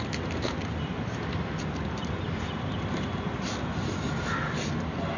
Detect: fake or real real